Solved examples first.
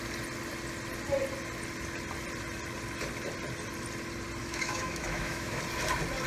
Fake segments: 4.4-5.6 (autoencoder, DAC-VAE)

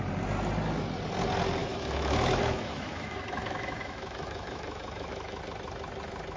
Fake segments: 1.6-5.4 (autoencoder, DAC-VAE)

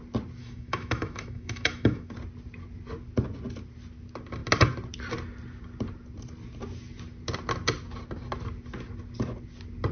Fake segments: 0.4-2.1 (autoencoder, DAC-VAE)